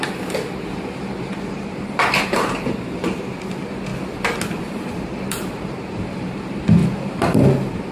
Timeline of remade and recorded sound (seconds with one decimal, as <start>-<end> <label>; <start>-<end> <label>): 0.0-3.9 remade; 3.9-4.7 recorded; 4.7-7.9 remade